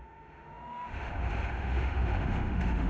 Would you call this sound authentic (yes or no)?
no